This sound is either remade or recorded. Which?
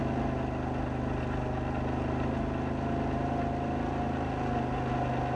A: recorded